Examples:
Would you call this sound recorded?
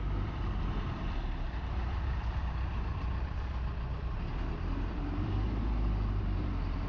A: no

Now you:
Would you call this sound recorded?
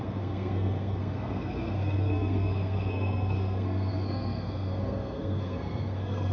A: no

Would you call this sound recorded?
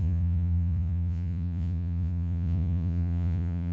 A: no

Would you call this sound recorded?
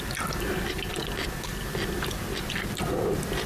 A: yes